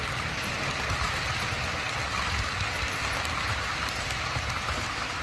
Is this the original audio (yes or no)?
yes